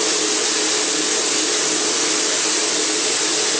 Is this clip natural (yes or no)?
yes